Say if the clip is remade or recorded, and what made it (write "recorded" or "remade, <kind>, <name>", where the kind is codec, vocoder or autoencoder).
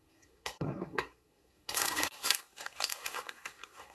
remade, codec, SNAC